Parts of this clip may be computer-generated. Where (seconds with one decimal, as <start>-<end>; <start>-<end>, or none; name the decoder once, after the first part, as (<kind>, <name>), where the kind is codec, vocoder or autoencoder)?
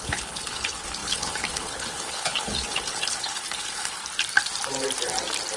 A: 0.0-4.0 (codec, HILCodec)